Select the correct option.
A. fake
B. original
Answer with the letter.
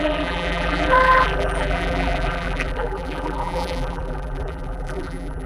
A